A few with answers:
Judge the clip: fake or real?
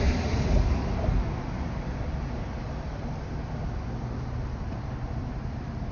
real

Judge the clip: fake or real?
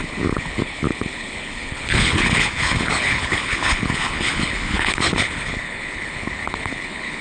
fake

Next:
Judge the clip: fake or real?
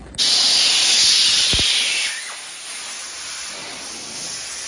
real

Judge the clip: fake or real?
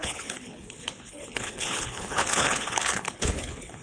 fake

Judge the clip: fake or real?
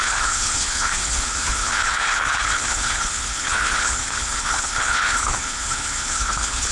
fake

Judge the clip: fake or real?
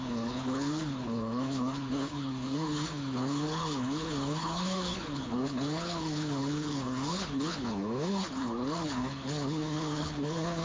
fake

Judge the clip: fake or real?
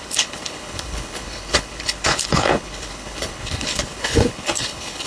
fake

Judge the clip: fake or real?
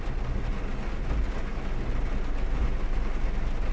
real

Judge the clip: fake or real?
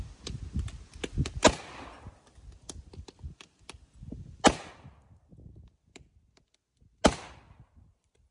real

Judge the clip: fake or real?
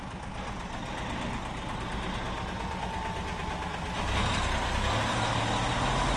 real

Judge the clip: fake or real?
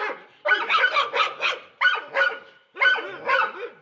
real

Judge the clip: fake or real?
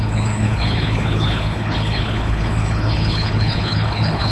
fake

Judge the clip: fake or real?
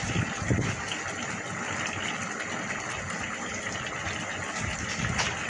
real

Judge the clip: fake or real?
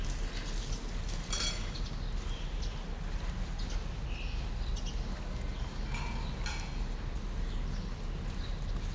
real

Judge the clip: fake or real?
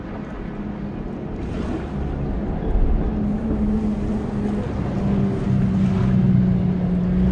real